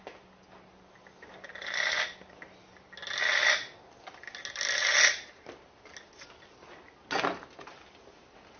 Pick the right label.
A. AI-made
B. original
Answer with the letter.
B